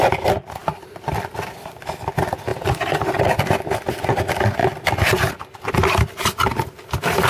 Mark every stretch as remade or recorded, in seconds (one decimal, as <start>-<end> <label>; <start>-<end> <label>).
0.0-7.3 recorded